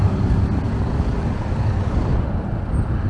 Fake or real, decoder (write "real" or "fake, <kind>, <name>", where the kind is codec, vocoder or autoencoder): real